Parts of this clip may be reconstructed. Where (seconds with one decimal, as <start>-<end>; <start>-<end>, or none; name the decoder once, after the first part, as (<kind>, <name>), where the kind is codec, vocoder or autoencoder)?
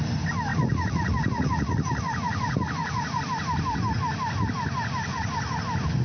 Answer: 0.5-3.2 (vocoder, Vocos); 5.1-5.6